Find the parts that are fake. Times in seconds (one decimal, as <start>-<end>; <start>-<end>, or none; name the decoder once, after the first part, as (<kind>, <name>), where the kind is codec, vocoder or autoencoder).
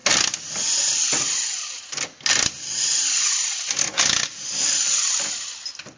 none